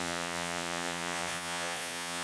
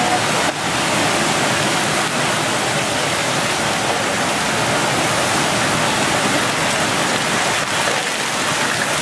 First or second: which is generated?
first